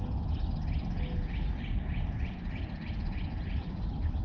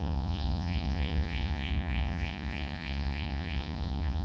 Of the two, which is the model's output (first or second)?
second